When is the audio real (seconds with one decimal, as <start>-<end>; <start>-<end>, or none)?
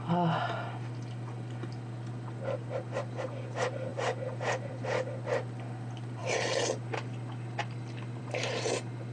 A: 0.0-9.1